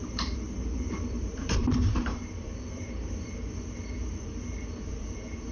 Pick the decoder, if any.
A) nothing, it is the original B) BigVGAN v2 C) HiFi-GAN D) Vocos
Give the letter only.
B